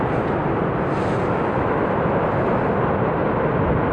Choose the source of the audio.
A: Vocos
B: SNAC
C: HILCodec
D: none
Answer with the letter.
D